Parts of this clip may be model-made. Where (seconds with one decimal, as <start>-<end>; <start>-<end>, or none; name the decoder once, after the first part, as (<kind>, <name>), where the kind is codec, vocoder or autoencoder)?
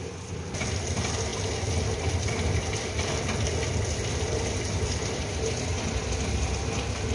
none